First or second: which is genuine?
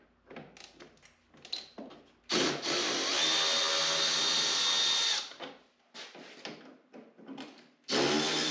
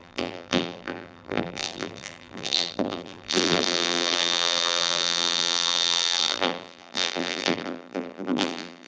first